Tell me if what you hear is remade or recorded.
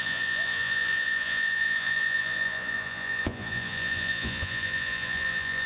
remade